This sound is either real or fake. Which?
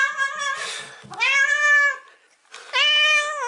real